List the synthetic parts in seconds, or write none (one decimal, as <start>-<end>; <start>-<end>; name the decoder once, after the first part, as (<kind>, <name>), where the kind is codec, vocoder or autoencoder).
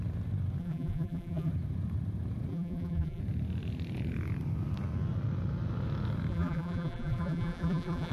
0.6-1.5 (vocoder, BigVGAN v2); 2.5-3.2; 6.3-8.1